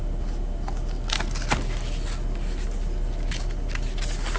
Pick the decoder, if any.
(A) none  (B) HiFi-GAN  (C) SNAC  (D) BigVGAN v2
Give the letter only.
A